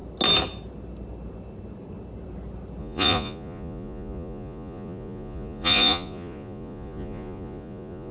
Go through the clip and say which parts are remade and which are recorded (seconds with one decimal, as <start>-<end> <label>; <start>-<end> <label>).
0.0-2.8 recorded; 2.8-8.1 remade